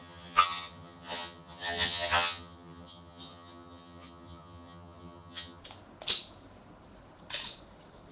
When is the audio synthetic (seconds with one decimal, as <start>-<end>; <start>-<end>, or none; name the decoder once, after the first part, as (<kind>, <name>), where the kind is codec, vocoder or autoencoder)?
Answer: 0.0-5.6 (vocoder, HiFi-GAN)